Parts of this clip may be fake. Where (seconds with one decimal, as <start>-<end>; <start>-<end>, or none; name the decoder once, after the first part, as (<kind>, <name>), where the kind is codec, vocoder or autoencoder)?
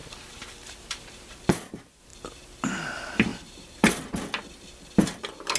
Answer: 0.0-1.3 (vocoder, BigVGAN v2); 3.3-3.9